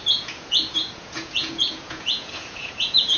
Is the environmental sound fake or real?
fake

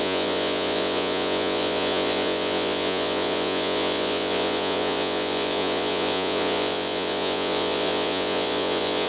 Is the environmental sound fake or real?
fake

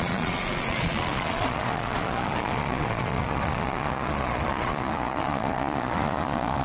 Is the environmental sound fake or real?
fake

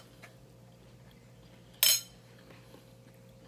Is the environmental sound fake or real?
real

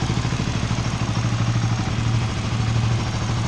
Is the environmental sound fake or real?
real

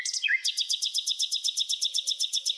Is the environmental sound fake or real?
fake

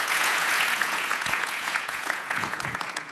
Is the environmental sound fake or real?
fake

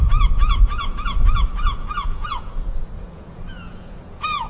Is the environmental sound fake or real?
fake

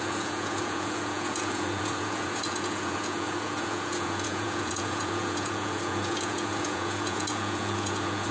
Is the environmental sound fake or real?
fake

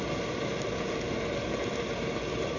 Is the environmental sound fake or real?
real